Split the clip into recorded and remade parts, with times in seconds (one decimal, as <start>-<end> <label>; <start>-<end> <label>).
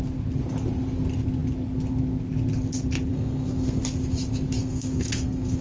0.0-3.1 recorded; 3.1-3.8 remade; 3.8-4.6 recorded; 4.6-5.6 remade